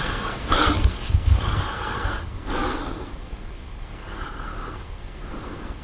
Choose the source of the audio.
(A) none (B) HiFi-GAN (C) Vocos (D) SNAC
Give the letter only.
D